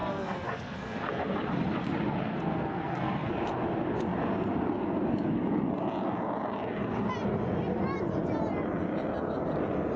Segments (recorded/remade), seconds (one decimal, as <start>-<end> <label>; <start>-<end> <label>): 0.0-1.1 remade; 1.1-2.3 recorded; 2.3-3.3 remade; 3.3-10.0 recorded